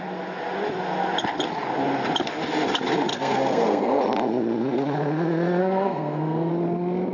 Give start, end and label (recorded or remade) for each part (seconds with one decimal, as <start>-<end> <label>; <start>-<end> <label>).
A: 0.0-3.1 recorded; 3.1-4.0 remade; 4.0-5.6 recorded; 5.6-6.5 remade; 6.5-7.1 recorded